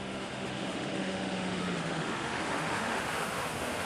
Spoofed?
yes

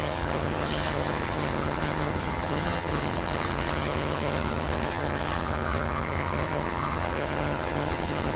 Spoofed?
yes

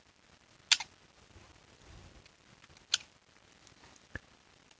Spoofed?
no